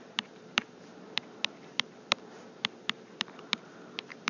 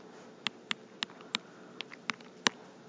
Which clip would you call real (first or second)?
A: second